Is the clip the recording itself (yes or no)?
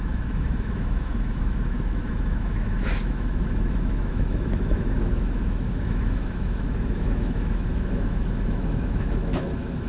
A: no